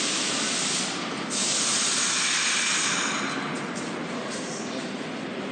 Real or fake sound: real